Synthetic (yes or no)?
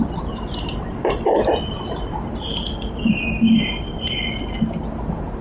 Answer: no